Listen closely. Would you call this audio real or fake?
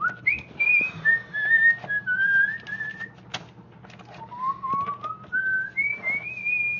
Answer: real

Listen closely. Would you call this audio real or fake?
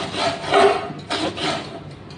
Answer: real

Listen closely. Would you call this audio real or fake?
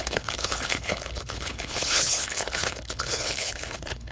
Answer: fake